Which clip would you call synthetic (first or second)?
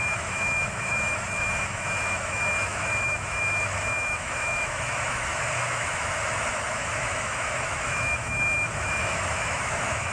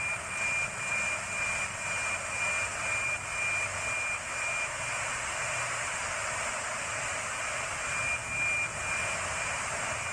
first